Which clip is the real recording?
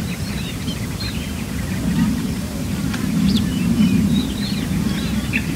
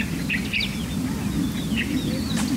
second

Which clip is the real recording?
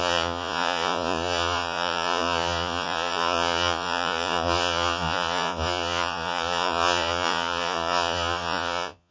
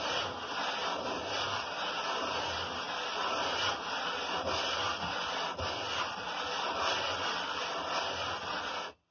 second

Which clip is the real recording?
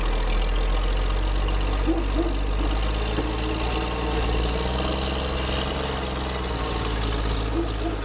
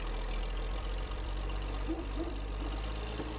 first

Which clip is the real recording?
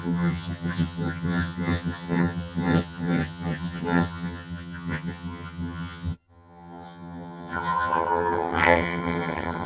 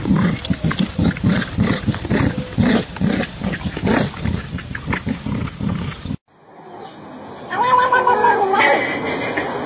second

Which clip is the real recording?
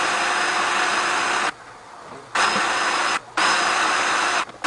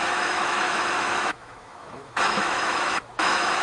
first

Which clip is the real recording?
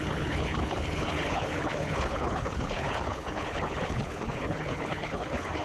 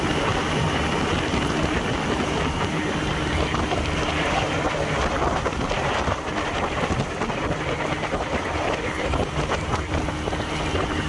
second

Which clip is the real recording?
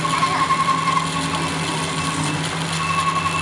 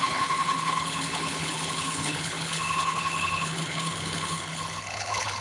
first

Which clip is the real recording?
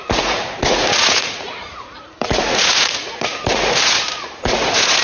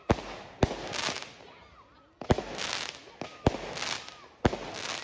second